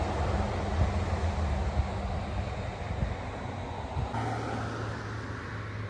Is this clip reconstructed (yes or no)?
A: no